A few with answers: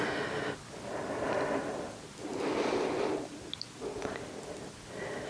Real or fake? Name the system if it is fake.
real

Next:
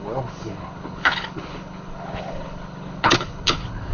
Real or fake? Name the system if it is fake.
fake, codec, HILCodec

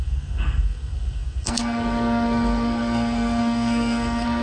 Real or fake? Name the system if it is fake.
fake, codec, SNAC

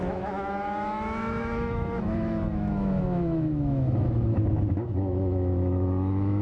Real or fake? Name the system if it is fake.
fake, autoencoder, DAC-VAE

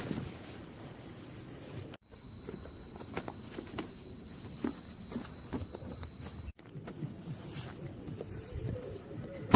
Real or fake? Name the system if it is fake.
real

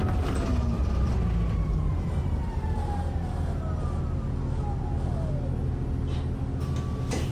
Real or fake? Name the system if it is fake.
real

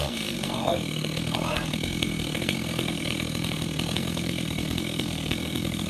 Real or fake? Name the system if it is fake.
fake, codec, SNAC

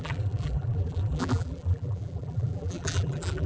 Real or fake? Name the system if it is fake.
fake, vocoder, BigVGAN v2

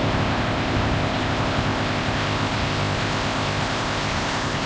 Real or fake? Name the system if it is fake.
fake, codec, ZipCodec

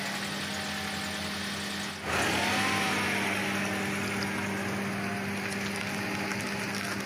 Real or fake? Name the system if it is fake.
real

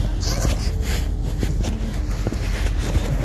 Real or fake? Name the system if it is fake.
real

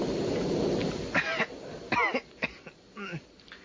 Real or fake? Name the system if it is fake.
real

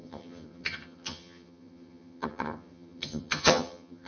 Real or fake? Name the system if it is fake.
fake, vocoder, HiFi-GAN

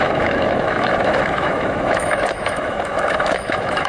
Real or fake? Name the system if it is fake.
fake, autoencoder, DAC-VAE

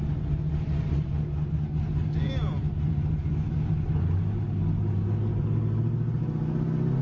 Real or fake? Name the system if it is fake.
real